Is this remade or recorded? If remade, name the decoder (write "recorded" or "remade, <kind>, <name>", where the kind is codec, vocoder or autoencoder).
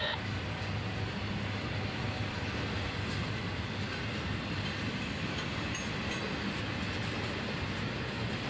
recorded